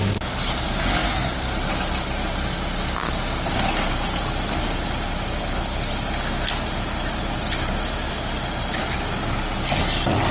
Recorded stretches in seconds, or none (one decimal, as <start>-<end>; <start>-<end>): 0.0-5.4; 5.9-10.3